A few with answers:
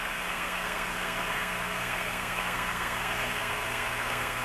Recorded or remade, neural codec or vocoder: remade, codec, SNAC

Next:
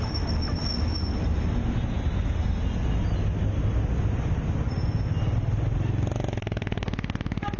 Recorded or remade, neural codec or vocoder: recorded